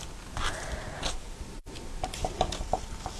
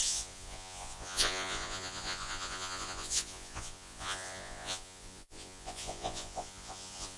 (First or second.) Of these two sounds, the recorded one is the first